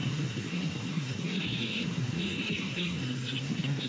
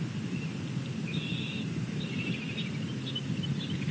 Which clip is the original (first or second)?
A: second